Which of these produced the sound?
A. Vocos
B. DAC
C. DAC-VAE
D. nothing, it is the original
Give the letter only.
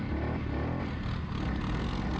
D